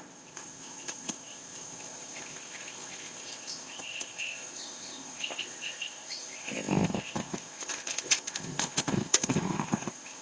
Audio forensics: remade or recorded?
remade